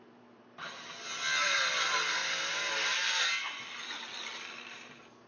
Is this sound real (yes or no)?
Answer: no